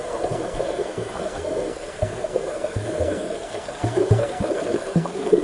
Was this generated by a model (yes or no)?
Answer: yes